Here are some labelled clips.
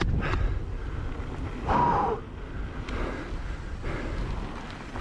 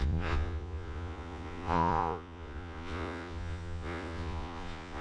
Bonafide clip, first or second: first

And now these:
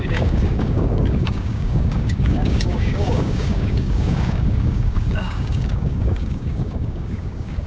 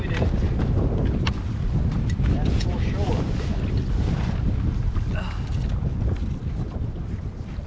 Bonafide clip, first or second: second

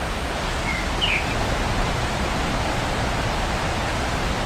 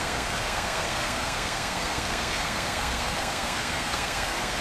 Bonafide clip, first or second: first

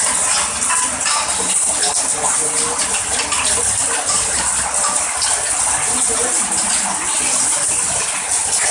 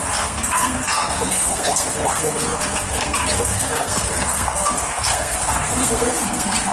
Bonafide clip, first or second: first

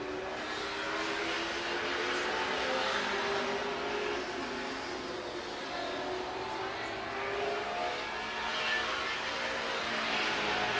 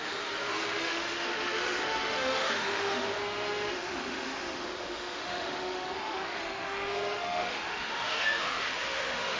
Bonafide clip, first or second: first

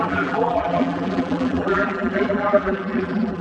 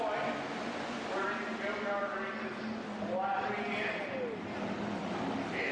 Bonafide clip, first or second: second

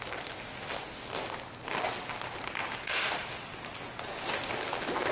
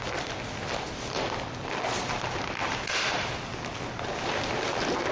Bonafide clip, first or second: first